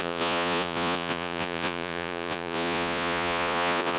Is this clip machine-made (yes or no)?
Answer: yes